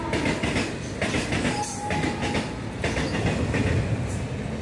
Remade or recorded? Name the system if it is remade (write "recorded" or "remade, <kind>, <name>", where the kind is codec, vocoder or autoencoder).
recorded